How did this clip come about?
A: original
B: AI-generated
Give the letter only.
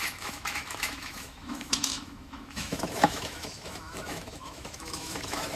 B